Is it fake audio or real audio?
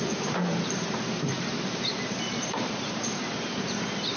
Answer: fake